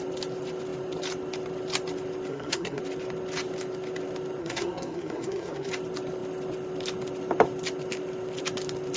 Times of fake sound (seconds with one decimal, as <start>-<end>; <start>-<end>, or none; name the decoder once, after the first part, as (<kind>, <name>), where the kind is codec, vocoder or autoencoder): 2.3-2.8 (codec, SNAC); 4.4-5.7